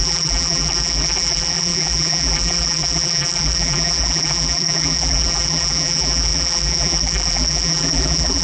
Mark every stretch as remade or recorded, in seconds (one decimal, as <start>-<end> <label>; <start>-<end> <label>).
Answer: 0.0-8.4 remade